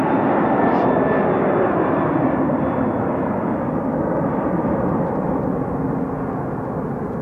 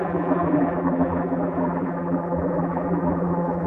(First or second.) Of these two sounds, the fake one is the second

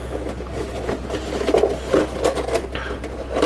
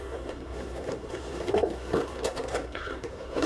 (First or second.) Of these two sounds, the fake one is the second